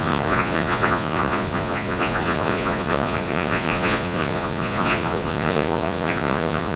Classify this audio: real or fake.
fake